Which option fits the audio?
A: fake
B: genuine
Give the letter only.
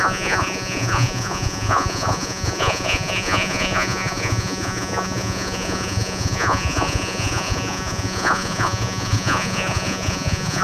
A